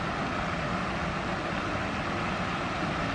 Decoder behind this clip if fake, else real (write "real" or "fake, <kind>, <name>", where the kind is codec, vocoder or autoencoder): real